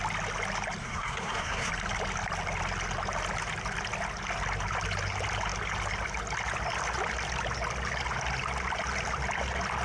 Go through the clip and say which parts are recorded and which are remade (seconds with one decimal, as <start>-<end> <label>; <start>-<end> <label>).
0.0-0.8 recorded; 0.8-1.7 remade; 1.7-9.8 recorded